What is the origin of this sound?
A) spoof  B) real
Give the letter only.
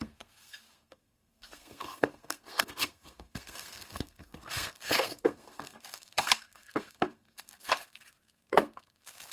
A